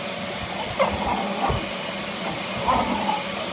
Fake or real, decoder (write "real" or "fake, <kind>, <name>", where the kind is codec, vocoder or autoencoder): real